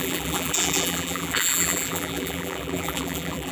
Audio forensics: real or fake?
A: fake